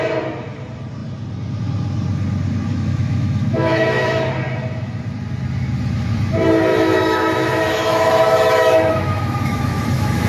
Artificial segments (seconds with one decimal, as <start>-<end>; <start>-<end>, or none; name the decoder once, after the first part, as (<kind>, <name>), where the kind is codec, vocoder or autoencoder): 2.7-4.3 (autoencoder, DAC-VAE); 6.7-10.3